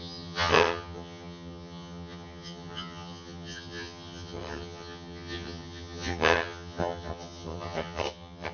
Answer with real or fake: fake